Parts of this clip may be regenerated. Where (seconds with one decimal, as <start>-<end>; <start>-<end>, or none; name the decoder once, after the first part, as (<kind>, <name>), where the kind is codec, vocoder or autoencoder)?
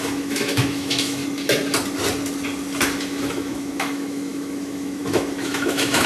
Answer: 0.0-1.2 (autoencoder, DAC-VAE); 3.0-6.1